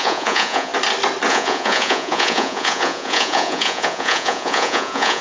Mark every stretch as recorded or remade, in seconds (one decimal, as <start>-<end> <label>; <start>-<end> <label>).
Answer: 0.0-0.7 remade; 0.7-1.3 recorded; 1.3-5.2 remade